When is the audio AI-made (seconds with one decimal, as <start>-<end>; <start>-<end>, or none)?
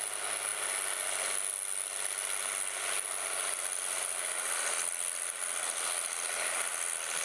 none